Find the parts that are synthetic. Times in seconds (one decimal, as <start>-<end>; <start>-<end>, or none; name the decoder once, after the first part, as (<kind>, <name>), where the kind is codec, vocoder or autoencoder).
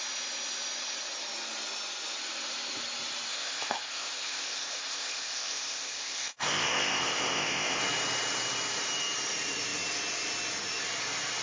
3.3-7.8 (codec, ZipCodec)